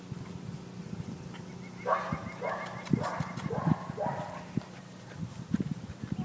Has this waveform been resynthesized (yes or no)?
no